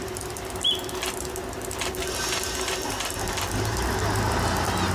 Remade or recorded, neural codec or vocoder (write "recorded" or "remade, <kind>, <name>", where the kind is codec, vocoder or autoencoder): recorded